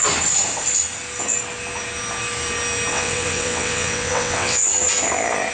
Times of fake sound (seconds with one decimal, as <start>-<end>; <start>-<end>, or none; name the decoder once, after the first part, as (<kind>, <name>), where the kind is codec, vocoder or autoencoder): 2.9-4.7 (vocoder, WaveNeXt)